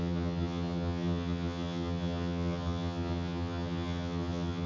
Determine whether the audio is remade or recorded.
remade